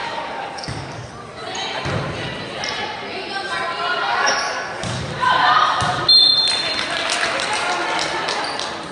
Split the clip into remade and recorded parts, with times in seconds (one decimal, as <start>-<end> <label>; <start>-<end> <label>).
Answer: 0.0-1.1 remade; 1.1-4.1 recorded; 4.1-5.1 remade; 5.1-8.9 recorded